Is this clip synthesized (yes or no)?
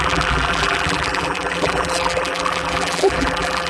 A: yes